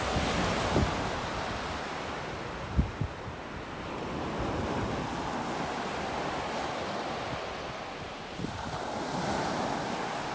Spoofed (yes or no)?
no